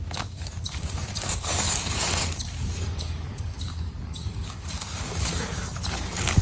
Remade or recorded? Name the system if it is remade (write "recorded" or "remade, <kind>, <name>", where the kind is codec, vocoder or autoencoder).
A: remade, codec, DAC